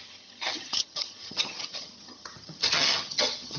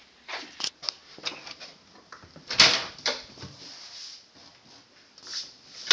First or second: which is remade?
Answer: first